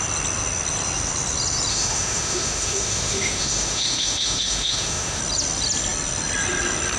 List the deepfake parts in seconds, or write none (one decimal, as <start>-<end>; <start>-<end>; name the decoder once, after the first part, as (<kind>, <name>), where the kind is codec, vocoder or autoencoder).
1.7-5.2 (autoencoder, DAC-VAE)